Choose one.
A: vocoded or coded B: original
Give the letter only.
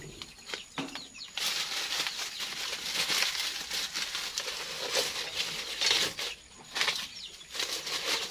B